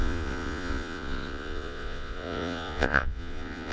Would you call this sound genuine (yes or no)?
no